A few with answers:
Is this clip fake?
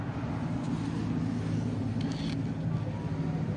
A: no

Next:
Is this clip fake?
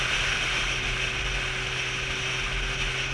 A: no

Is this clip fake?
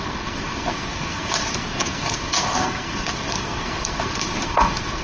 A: yes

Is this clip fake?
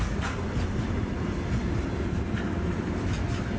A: no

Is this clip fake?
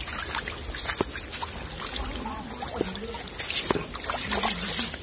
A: no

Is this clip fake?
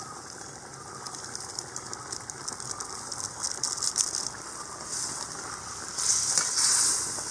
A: no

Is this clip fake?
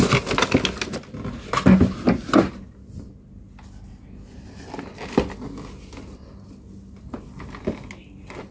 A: no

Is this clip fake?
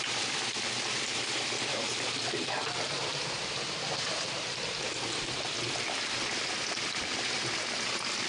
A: yes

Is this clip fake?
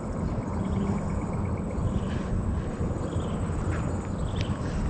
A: no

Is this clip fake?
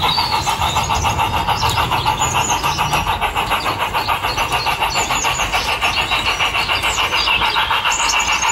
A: no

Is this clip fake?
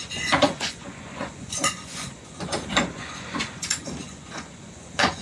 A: yes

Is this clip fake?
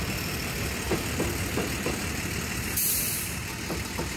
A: yes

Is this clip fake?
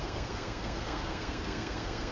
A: yes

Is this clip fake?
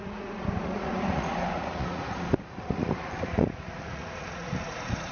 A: yes